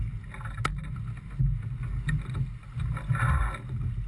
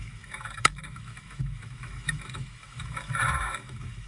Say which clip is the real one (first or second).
first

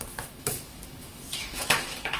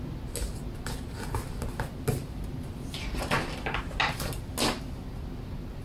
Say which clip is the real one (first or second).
second